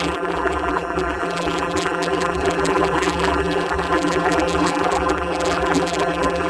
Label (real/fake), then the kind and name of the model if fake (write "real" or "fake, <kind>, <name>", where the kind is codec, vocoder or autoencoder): fake, vocoder, BigVGAN v2